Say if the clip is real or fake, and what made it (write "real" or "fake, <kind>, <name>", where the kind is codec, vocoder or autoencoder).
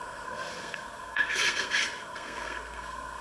fake, codec, SNAC